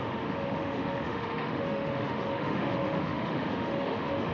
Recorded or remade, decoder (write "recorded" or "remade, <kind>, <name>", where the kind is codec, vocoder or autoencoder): remade, autoencoder, DAC-VAE